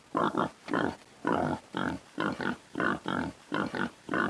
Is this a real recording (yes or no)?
no